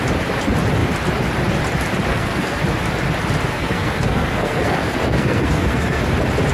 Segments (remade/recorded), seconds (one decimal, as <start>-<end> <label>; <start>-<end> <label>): 0.0-2.1 recorded; 2.1-2.6 remade; 2.6-3.5 recorded; 3.5-6.0 remade; 6.0-6.5 recorded